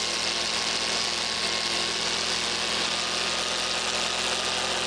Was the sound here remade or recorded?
recorded